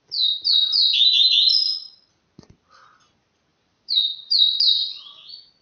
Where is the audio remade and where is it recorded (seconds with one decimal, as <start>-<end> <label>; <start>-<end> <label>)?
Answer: 0.0-1.5 recorded; 1.5-2.1 remade; 2.1-3.5 recorded; 3.5-5.0 remade; 5.0-5.6 recorded